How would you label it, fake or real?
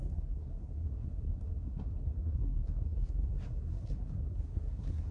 fake